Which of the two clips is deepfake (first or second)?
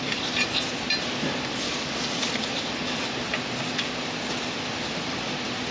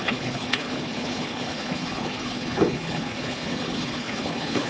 second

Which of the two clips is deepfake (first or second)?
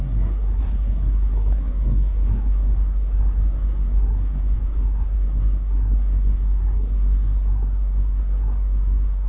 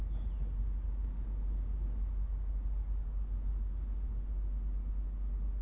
first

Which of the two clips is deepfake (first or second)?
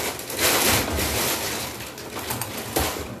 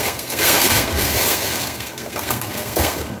second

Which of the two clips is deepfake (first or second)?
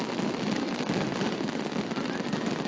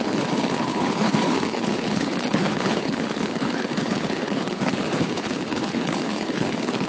second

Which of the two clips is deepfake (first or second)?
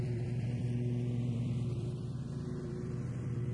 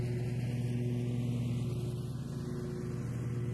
first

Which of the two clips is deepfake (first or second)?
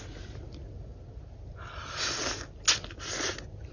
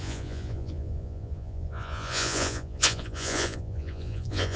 second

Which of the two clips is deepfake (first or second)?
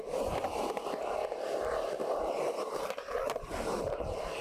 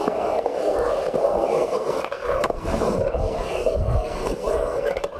second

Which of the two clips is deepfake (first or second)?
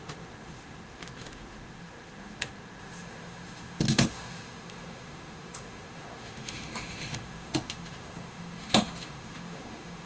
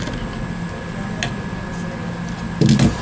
first